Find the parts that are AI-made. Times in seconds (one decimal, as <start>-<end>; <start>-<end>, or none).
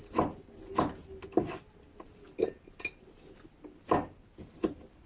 none